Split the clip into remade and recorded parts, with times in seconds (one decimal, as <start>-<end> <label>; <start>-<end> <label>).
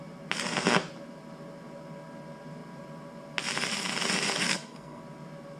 0.0-4.4 recorded; 4.4-5.0 remade; 5.0-5.6 recorded